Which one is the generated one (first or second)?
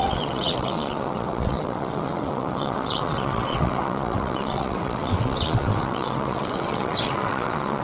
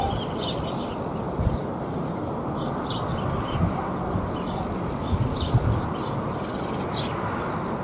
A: first